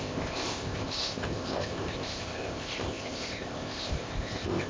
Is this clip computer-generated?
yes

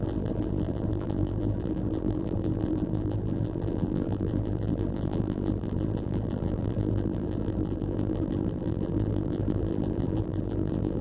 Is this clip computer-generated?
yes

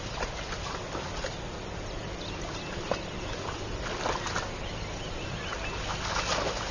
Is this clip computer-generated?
no